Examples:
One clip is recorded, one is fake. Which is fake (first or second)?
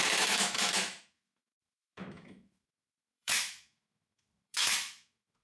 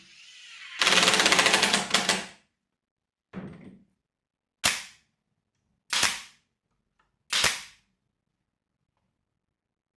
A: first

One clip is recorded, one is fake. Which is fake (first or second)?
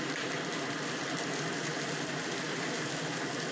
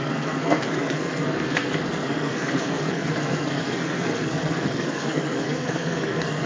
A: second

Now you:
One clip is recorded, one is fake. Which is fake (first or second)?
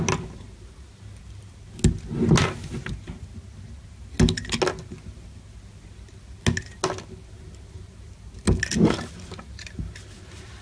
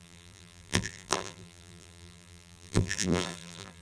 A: second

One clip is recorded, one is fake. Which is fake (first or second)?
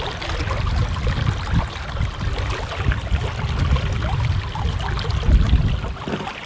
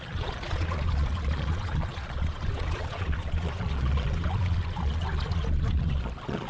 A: second